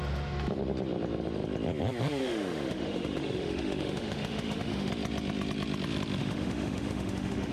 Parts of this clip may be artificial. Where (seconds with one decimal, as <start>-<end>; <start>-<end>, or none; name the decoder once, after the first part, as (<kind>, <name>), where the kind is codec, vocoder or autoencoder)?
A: 2.2-4.9 (autoencoder, DAC-VAE); 6.2-7.5